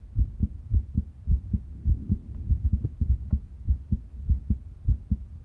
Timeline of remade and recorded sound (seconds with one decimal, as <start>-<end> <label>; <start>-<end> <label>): 0.0-5.4 recorded